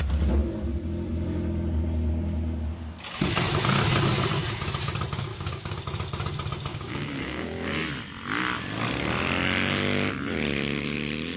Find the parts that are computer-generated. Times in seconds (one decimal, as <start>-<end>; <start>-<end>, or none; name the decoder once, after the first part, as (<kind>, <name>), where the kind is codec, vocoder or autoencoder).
5.3-5.8 (codec, DAC); 6.7-7.5